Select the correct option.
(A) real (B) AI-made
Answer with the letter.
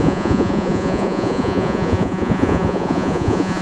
B